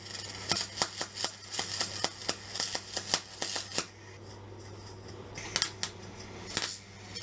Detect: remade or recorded recorded